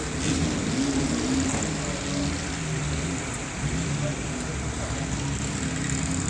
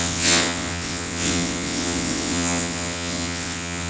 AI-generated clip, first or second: second